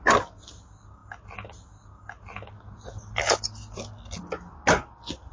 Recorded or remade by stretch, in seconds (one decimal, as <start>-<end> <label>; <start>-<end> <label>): 0.0-5.3 recorded